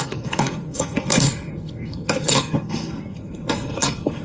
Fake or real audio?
fake